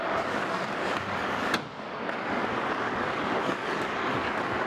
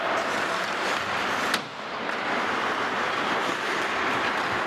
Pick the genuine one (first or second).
second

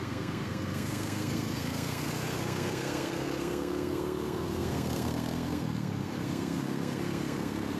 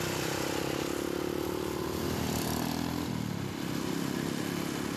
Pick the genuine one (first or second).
second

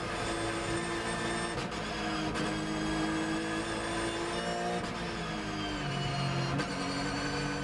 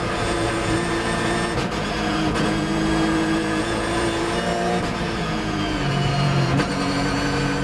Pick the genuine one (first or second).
first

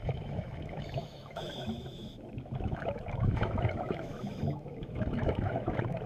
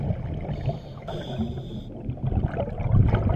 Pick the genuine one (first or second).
second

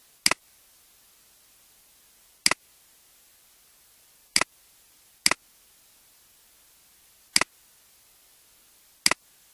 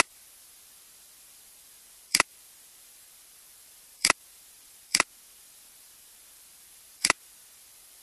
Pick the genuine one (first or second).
first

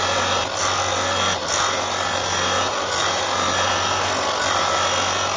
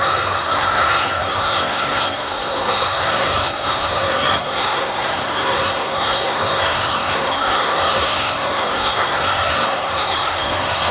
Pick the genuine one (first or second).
first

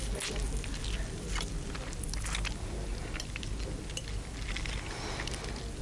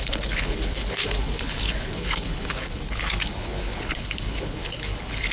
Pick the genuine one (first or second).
first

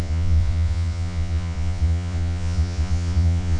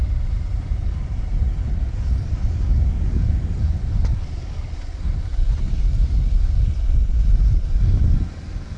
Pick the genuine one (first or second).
second